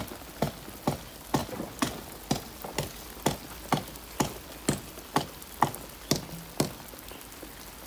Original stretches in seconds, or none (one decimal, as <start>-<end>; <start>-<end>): 0.0-7.9